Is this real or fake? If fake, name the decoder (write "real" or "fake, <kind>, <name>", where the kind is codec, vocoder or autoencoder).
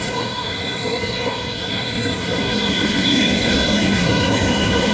fake, codec, SNAC